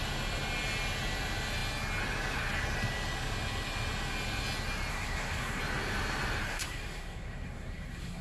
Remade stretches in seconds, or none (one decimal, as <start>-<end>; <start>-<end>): 4.9-5.6; 6.5-8.2